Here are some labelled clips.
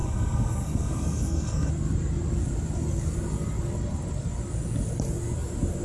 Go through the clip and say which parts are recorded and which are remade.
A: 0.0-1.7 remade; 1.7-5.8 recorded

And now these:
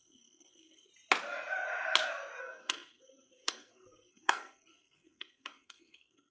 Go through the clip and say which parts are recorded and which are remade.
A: 0.0-0.9 remade; 0.9-2.4 recorded; 2.4-6.3 remade